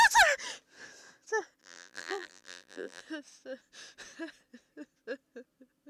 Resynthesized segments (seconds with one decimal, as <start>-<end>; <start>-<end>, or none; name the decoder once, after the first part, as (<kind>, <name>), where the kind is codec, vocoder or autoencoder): 1.6-3.0 (vocoder, BigVGAN v2)